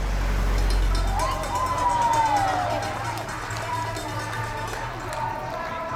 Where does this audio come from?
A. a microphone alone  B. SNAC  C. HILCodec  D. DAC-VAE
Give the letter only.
A